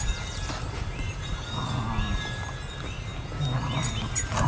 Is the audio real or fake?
real